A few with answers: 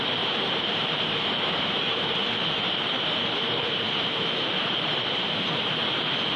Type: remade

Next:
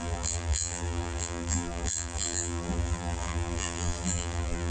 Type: remade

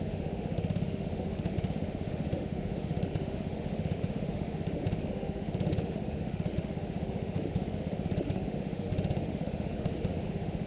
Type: remade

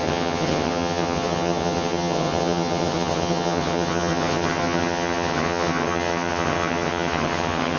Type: remade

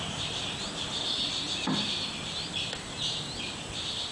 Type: recorded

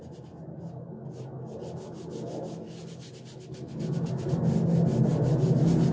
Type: recorded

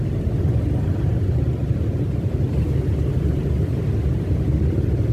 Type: recorded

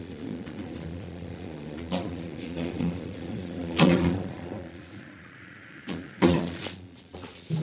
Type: remade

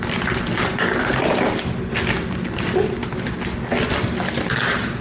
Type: recorded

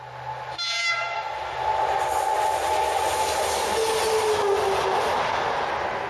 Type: recorded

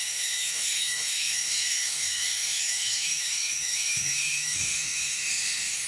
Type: remade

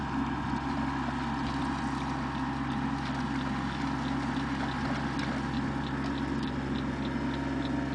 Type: recorded